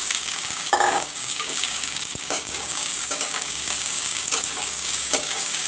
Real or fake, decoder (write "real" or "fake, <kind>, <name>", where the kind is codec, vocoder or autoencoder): fake, codec, DAC